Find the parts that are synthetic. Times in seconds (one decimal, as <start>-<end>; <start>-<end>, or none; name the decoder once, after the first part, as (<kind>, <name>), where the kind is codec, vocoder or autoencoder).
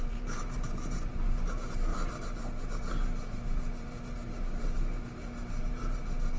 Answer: 0.0-6.4 (vocoder, BigVGAN v2)